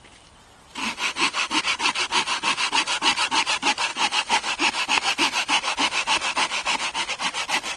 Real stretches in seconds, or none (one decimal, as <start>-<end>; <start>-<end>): 0.0-0.8; 1.6-2.1; 2.7-3.9; 7.1-7.8